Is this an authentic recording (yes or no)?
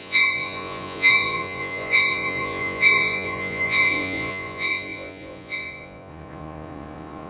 no